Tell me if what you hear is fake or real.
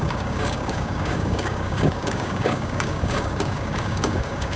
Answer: fake